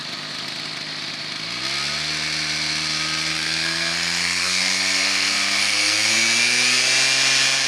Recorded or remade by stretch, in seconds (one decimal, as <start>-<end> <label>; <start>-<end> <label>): 0.0-3.3 recorded; 3.3-6.1 remade; 6.1-7.7 recorded